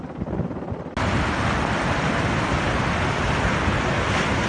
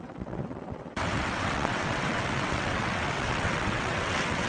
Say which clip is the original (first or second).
first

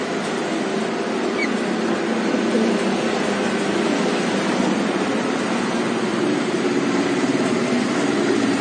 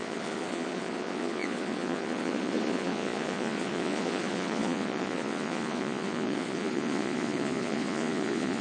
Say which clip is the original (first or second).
first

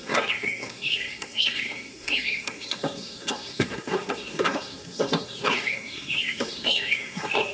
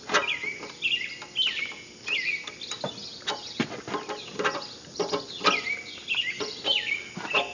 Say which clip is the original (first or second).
second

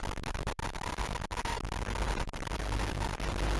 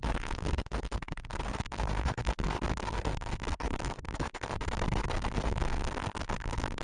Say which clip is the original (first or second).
first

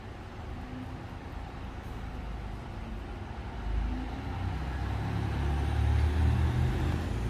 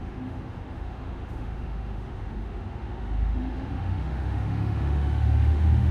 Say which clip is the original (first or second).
first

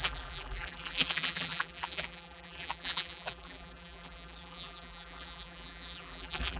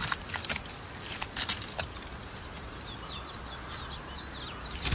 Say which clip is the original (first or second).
second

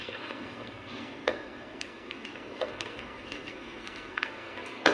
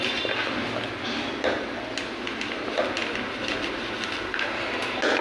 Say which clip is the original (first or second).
second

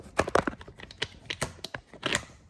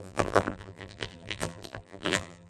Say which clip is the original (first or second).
first